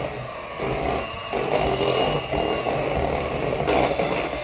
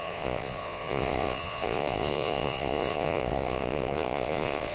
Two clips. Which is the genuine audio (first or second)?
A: first